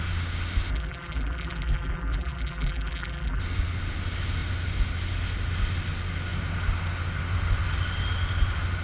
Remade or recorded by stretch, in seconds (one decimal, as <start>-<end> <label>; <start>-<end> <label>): 0.0-0.7 recorded; 0.7-3.4 remade; 3.4-8.8 recorded